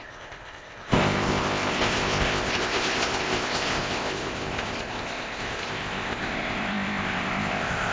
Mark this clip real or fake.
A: fake